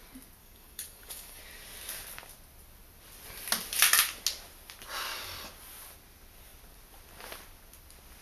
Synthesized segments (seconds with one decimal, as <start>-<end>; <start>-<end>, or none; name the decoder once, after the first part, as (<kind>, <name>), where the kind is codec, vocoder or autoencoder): 0.4-1.4 (codec, DAC)